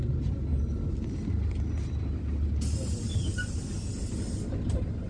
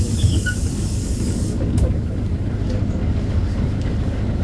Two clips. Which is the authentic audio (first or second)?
first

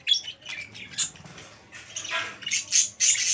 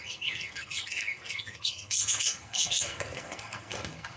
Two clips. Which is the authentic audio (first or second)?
first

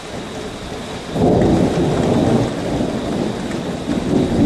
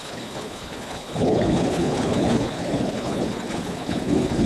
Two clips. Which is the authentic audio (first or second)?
first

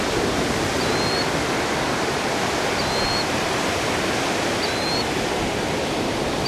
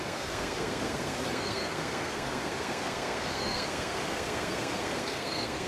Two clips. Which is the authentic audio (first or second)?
first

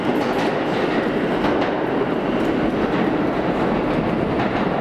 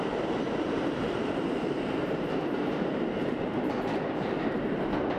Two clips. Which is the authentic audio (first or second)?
first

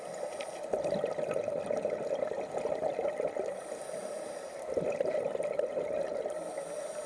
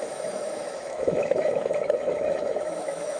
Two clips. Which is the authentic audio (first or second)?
first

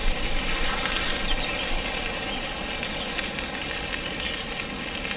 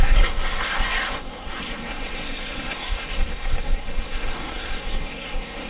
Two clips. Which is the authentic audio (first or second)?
first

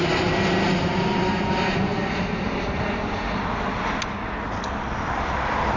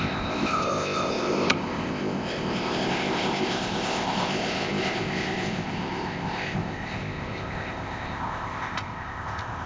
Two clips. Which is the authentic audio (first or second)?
first